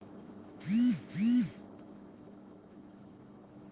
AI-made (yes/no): yes